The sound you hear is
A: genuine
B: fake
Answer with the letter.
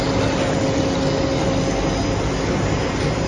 A